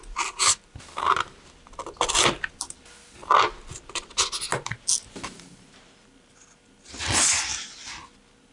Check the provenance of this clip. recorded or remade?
recorded